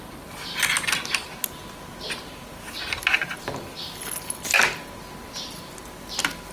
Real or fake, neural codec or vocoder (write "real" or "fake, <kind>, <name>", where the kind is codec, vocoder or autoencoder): real